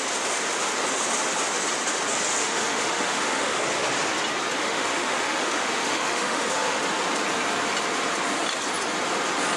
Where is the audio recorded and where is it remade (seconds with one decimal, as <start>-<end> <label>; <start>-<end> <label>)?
0.0-2.4 recorded; 2.4-3.6 remade; 3.6-4.6 recorded; 4.6-6.8 remade; 6.8-9.6 recorded